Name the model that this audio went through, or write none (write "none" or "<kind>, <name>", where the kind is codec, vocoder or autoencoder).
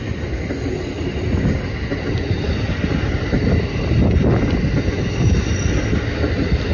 none